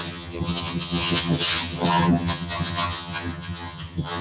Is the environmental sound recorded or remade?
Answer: remade